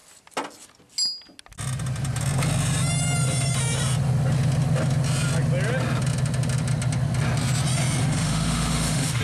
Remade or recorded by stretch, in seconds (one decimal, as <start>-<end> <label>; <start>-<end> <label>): 0.0-8.0 recorded; 8.0-9.2 remade